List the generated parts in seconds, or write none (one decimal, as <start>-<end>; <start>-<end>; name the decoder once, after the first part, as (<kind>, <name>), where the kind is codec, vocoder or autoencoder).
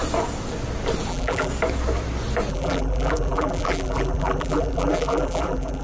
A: 1.1-1.5 (vocoder, BigVGAN v2); 2.5-5.8